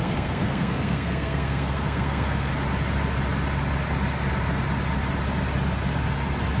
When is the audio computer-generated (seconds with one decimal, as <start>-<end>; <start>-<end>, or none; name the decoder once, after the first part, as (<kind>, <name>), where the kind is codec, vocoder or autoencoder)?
0.0-2.5 (codec, SNAC)